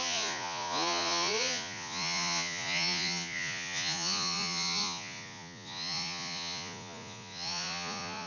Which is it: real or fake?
fake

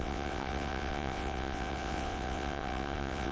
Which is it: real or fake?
fake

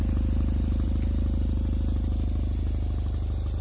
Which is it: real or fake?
real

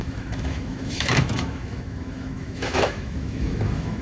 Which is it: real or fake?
fake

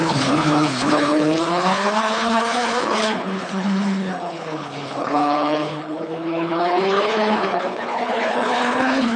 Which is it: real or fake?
fake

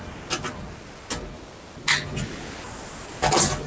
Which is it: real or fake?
real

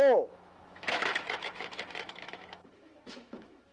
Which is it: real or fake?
fake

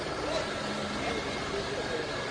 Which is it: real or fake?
real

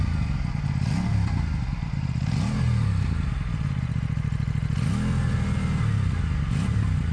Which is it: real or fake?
real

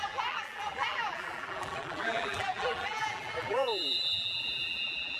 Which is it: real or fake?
fake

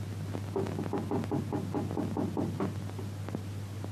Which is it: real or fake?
real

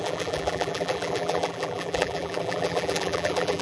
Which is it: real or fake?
fake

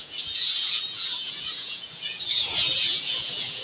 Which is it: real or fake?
fake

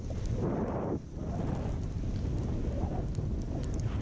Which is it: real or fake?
real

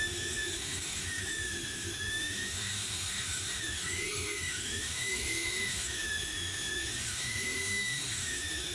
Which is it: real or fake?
fake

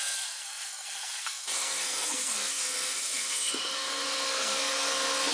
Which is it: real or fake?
fake